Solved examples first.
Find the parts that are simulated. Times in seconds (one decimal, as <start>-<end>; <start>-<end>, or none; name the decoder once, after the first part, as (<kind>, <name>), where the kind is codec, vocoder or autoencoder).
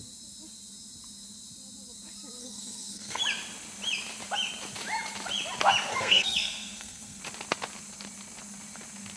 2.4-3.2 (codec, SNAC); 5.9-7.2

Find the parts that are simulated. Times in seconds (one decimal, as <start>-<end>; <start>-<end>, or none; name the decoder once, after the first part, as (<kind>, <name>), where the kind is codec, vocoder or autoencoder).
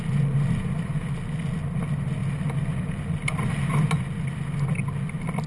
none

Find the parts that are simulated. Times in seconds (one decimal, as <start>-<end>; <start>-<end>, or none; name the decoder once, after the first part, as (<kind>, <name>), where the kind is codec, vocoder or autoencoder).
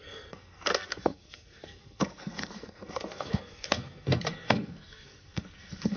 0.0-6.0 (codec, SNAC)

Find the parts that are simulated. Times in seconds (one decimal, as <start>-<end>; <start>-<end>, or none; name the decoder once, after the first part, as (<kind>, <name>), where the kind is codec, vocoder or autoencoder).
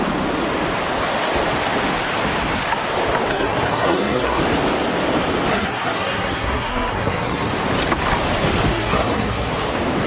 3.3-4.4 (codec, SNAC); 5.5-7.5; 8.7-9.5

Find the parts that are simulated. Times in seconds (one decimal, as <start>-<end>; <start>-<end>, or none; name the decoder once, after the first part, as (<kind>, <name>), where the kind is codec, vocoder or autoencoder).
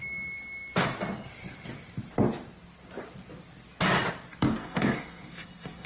4.6-5.9 (codec, SNAC)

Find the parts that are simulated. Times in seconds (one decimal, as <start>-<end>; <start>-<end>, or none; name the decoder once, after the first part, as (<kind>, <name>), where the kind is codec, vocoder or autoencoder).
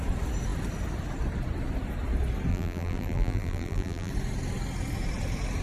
2.5-4.1 (vocoder, BigVGAN v2)